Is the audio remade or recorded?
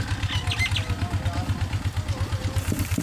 recorded